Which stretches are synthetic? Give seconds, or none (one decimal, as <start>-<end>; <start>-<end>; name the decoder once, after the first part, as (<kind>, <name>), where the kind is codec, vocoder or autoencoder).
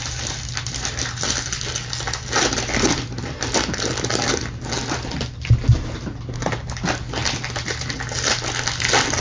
none